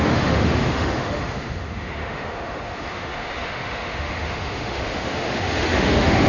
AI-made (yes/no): yes